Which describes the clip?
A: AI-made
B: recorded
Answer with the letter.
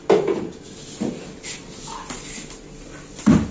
B